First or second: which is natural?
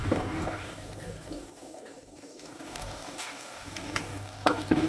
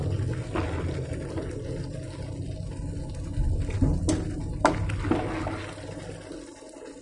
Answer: second